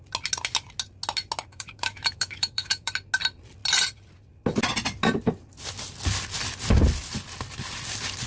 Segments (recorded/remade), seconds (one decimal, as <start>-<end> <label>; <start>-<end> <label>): 0.0-1.5 recorded; 1.5-2.9 remade; 2.9-8.3 recorded